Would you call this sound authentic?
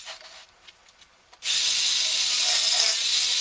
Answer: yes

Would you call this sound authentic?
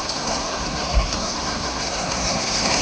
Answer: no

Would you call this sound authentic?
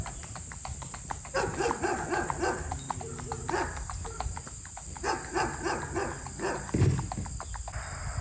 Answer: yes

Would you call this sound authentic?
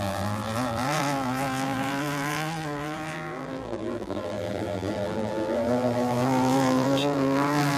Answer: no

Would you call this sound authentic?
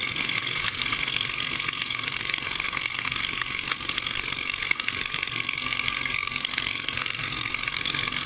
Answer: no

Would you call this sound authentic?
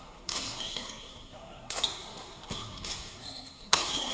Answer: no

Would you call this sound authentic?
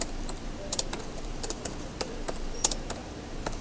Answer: no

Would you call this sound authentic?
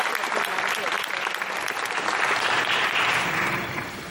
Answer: yes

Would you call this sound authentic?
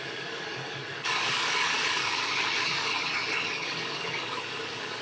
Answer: no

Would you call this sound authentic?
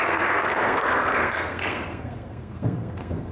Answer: no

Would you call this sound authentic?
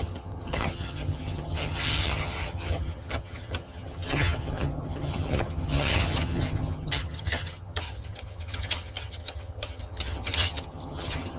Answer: no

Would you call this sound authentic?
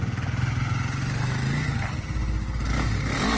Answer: yes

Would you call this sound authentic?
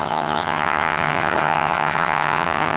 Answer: no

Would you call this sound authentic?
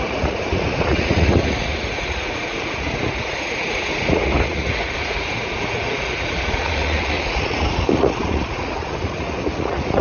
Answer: no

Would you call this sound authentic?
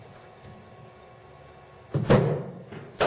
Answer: yes